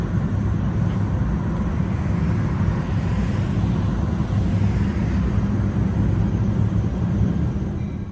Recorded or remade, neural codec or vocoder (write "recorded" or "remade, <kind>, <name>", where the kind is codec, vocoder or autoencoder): recorded